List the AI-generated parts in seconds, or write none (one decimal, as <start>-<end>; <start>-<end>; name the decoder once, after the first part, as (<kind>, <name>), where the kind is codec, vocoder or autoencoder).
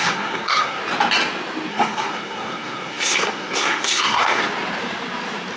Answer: 0.0-0.8 (codec, SNAC); 1.7-4.4